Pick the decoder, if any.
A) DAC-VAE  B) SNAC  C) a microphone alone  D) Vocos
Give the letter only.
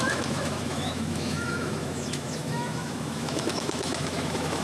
A